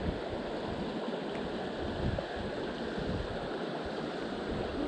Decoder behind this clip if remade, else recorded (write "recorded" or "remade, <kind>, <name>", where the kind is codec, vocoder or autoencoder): recorded